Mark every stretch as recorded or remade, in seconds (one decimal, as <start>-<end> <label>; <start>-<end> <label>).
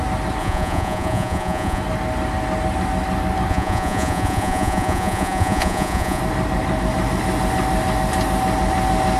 0.0-0.4 recorded; 0.4-1.8 remade; 1.8-3.5 recorded; 3.5-6.2 remade; 6.2-9.2 recorded